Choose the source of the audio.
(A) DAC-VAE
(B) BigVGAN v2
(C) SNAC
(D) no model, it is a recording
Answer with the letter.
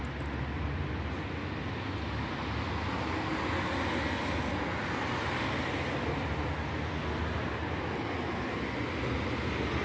D